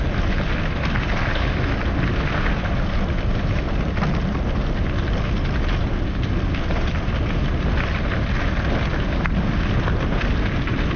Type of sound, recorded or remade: recorded